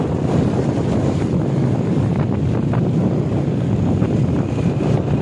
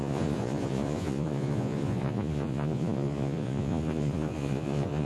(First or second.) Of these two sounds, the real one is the first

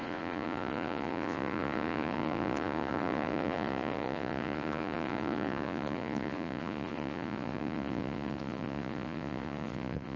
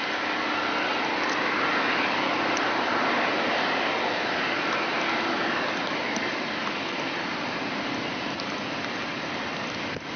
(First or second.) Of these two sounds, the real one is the second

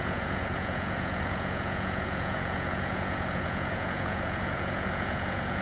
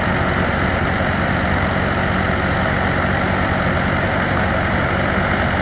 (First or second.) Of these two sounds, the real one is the second